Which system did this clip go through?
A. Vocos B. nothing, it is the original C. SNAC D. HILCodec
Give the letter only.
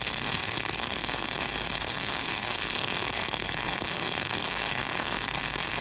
C